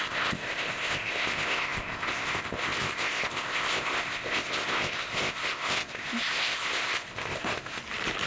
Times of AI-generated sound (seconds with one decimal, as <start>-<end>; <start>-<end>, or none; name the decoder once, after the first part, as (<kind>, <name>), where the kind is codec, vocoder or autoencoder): 0.0-7.8 (codec, ZipCodec)